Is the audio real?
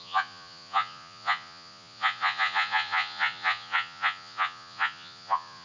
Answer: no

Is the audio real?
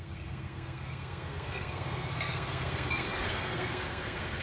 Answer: no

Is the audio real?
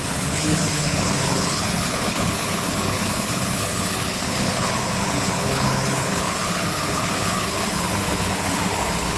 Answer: no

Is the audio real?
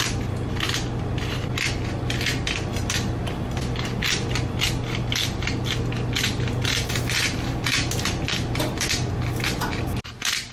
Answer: yes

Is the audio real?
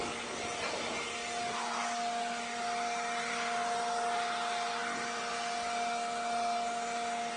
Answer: yes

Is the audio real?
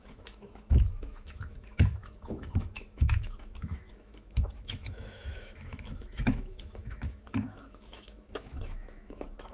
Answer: no